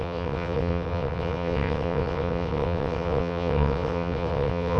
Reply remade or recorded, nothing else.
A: remade